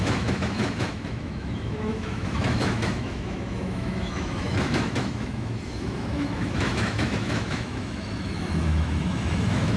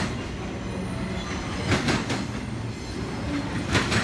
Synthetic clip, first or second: first